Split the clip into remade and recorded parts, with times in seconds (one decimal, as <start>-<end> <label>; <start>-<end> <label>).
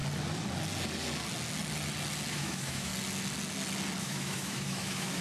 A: 0.0-2.3 recorded; 2.3-2.9 remade; 2.9-4.0 recorded; 4.0-5.2 remade